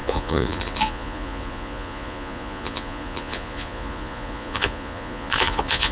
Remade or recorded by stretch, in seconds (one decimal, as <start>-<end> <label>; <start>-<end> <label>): 0.0-5.9 remade